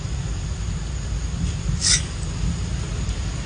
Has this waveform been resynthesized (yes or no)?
no